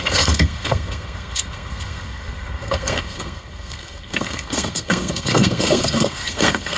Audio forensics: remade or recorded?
remade